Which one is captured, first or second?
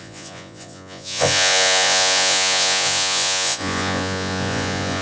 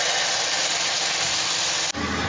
second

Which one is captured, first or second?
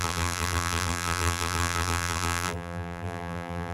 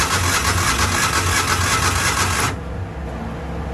second